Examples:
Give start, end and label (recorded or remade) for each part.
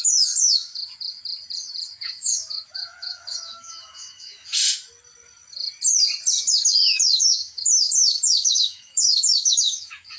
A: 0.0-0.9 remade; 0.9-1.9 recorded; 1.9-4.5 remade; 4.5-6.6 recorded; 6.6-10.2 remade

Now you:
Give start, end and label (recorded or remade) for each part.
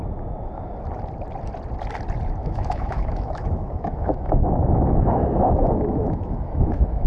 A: 0.0-2.4 recorded; 2.4-7.1 remade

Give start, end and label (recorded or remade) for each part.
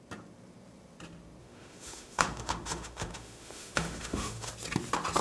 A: 0.0-1.4 recorded; 1.4-4.5 remade; 4.5-5.2 recorded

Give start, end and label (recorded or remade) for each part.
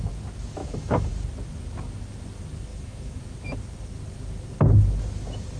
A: 0.0-0.6 recorded; 0.6-1.1 remade; 1.1-2.7 recorded; 2.7-3.2 remade; 3.2-5.6 recorded